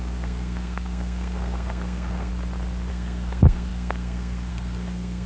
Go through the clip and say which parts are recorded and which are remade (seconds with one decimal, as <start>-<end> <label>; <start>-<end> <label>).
0.0-2.3 remade; 2.3-2.9 recorded; 2.9-5.3 remade